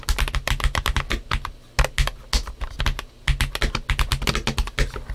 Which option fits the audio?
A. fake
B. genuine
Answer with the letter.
B